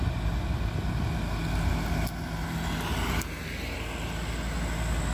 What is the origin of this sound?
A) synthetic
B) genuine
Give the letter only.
B